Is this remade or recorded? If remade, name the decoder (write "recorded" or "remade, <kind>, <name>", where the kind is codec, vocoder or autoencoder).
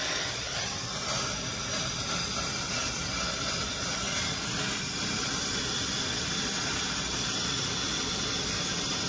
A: recorded